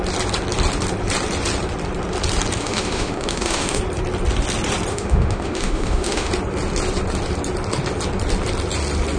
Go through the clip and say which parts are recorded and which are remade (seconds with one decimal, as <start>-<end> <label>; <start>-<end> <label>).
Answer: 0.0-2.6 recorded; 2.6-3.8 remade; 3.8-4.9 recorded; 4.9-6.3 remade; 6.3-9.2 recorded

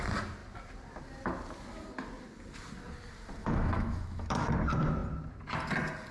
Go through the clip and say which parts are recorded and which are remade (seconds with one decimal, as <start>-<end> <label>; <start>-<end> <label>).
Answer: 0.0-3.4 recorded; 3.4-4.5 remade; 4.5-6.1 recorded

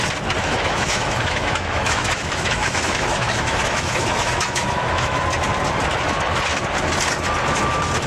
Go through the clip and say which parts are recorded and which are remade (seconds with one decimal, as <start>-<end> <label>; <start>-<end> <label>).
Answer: 0.0-0.4 recorded; 0.4-5.2 remade; 5.2-8.1 recorded